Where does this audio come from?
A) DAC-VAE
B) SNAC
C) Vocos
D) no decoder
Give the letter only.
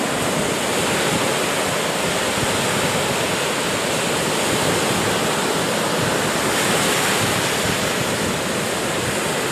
D